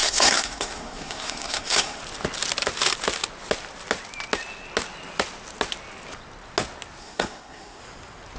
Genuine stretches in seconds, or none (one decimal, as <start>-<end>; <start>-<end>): 2.0-7.0; 7.8-8.4